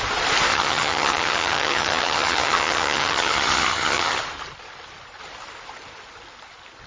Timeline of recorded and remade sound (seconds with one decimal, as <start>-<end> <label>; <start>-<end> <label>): 0.0-0.5 recorded; 0.5-4.2 remade; 4.2-6.9 recorded